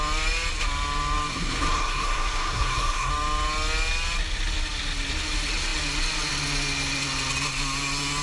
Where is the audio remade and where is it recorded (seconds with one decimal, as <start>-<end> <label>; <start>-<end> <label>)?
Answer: 0.0-1.3 recorded; 1.3-3.1 remade; 3.1-8.2 recorded